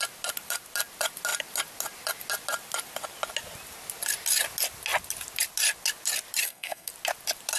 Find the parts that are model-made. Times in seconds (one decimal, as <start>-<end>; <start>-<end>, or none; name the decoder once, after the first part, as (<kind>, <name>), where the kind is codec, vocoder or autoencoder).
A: 6.4-6.9 (codec, SNAC)